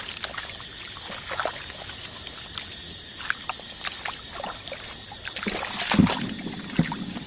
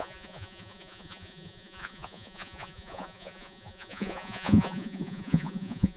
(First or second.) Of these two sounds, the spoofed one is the second